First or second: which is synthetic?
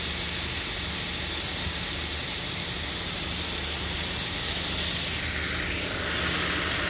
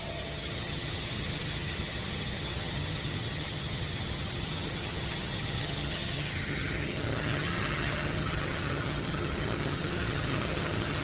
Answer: second